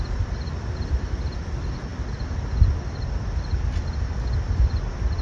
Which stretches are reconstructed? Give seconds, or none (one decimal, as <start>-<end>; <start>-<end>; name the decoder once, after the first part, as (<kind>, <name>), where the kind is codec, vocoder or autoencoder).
none